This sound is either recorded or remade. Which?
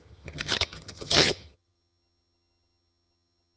remade